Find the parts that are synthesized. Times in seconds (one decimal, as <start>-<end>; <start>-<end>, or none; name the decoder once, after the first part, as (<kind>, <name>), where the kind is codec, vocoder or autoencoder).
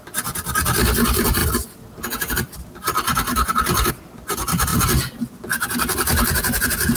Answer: none